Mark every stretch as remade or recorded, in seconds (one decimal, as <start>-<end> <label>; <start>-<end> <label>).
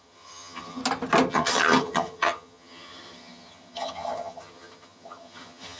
0.0-0.8 remade; 0.8-1.3 recorded; 1.3-5.8 remade